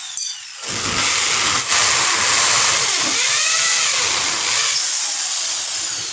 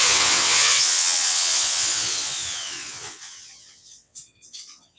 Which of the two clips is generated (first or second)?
second